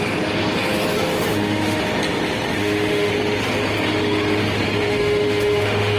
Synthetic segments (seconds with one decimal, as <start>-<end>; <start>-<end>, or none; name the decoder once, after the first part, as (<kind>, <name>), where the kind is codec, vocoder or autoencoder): 1.3-1.8 (autoencoder, DAC-VAE); 2.6-3.1; 4.9-6.0